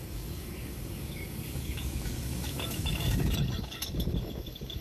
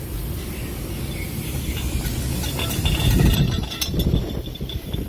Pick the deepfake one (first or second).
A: first